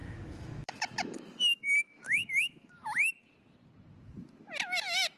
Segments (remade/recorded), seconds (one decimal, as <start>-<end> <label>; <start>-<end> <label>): 0.0-2.7 remade; 2.7-5.2 recorded